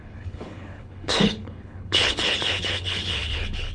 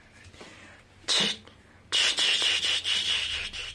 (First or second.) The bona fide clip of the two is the second